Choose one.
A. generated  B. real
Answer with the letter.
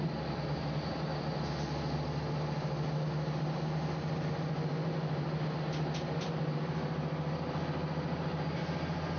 B